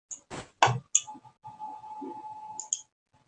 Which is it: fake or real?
real